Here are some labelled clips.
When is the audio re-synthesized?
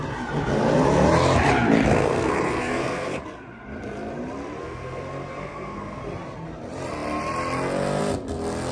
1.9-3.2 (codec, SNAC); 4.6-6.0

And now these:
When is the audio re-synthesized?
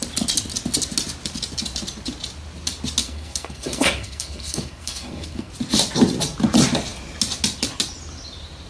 3.0-5.5 (codec, SNAC)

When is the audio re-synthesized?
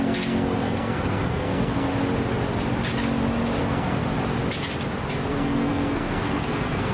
0.0-1.9 (codec, SNAC); 3.6-4.0; 5.3-6.9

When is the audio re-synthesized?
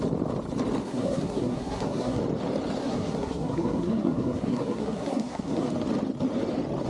0.8-2.2 (codec, SNAC); 2.8-5.7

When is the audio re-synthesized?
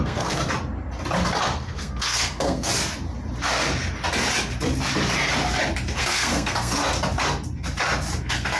0.0-0.4 (codec, SNAC); 1.4-2.7; 6.0-6.8; 8.2-8.6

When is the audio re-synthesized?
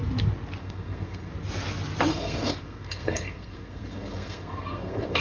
0.6-1.3 (codec, SNAC); 2.1-5.2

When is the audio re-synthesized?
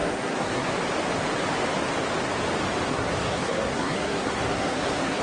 0.0-0.7 (codec, SNAC); 2.9-5.2